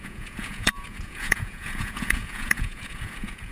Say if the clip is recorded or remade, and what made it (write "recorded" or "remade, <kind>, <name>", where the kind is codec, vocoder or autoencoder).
remade, vocoder, Vocos